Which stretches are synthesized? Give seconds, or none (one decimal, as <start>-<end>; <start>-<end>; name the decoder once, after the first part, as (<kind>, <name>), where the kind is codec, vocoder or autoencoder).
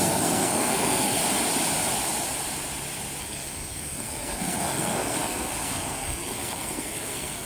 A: 0.0-1.2 (codec, SNAC); 3.2-7.5